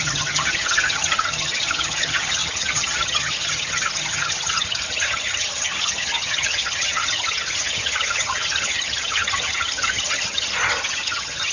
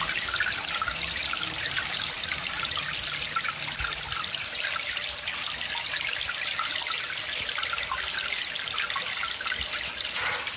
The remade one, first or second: first